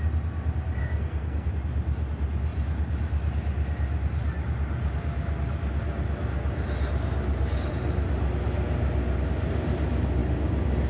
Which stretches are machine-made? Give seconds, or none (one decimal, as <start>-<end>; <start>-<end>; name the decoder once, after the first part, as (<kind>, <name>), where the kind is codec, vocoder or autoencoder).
0.8-1.5 (codec, SNAC)